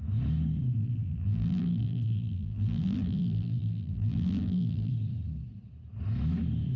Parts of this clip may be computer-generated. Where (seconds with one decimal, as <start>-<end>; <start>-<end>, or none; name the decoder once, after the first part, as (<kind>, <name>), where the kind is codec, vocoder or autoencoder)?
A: 0.8-4.9 (vocoder, BigVGAN v2)